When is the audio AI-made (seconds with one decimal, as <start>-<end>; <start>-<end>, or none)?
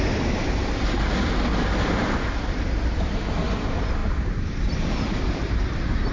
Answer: 0.0-1.5; 2.5-6.1